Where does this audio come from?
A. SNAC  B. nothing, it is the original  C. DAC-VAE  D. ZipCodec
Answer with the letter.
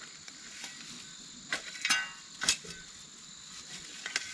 B